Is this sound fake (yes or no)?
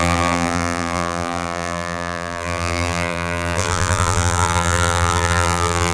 yes